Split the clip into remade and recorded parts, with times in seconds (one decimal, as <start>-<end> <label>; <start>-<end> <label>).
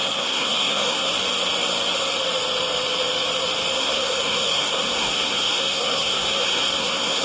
0.0-1.1 remade; 1.1-3.8 recorded; 3.8-7.2 remade